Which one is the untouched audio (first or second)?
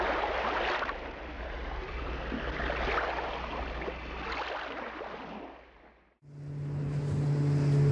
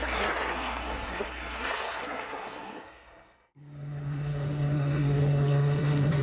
first